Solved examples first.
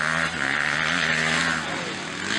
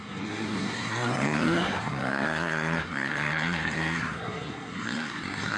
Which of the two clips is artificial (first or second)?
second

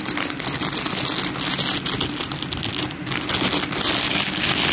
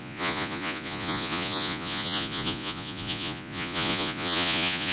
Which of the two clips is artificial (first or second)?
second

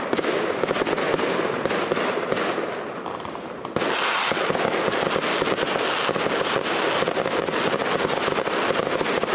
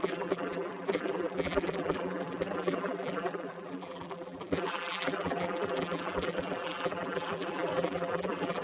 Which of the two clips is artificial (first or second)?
second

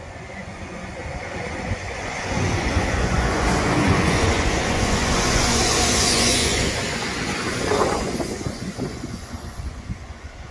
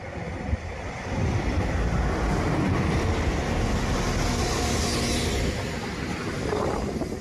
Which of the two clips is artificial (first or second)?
first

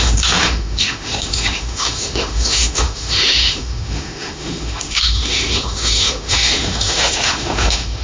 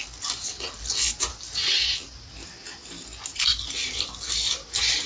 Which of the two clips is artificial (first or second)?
first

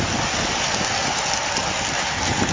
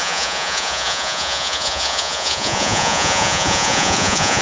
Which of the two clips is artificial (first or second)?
second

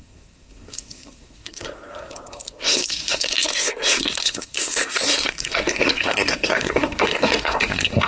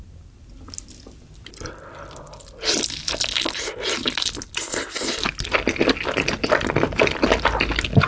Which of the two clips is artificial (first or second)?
first